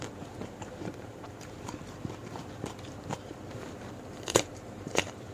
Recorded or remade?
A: remade